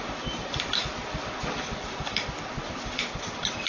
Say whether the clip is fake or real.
fake